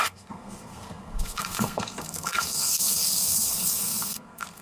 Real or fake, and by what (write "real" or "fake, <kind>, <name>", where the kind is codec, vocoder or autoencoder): fake, codec, SNAC